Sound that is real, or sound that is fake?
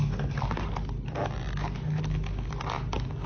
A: real